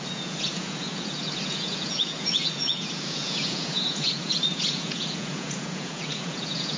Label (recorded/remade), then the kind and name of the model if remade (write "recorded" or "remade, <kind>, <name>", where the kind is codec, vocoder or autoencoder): remade, vocoder, Vocos